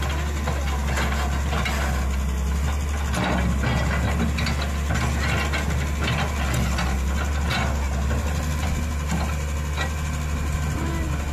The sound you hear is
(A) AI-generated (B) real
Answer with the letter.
B